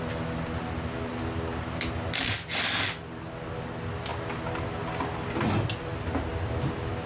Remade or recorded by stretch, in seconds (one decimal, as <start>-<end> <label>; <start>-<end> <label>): 0.0-7.1 recorded